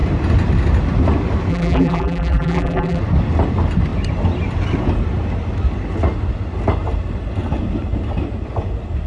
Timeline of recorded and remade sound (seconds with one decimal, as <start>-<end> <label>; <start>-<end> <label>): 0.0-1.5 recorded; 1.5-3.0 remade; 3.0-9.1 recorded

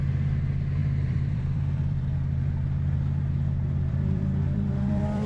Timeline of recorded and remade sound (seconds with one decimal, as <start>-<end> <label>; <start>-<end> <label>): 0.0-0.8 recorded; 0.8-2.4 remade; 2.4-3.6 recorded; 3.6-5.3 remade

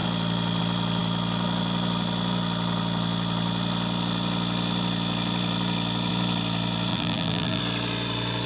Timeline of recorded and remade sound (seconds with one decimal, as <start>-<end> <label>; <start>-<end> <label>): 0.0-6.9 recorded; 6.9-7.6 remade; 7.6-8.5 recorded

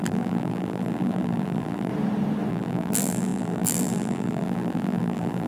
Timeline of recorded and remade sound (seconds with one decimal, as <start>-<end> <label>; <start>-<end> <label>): 0.0-1.9 remade; 1.9-2.5 recorded; 2.5-5.5 remade